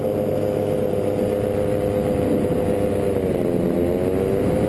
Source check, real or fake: real